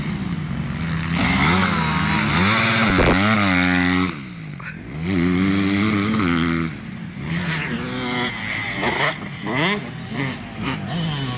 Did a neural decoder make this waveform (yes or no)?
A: no